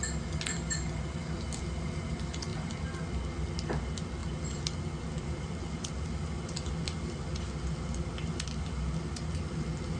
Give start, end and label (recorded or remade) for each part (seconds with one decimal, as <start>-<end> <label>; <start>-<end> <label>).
0.0-10.0 recorded